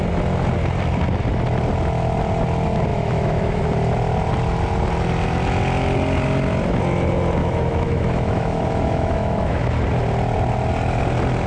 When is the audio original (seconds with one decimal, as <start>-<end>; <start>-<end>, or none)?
0.0-2.9; 3.6-7.4; 9.7-11.5